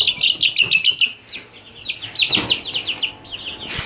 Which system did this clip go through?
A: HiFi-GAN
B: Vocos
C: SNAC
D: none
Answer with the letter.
D